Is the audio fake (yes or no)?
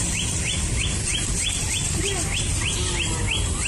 no